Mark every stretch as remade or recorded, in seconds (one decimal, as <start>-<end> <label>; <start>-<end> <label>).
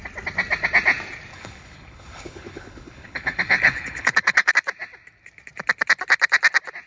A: 0.0-1.3 recorded; 1.3-4.5 remade; 4.5-6.9 recorded